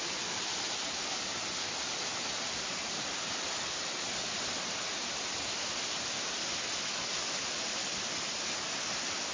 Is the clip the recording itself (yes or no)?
yes